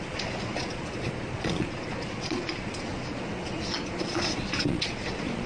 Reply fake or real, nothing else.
fake